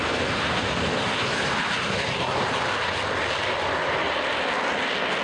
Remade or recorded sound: recorded